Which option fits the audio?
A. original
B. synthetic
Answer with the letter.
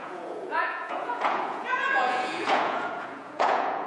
B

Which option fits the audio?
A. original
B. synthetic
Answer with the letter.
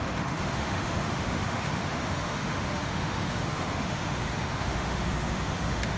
B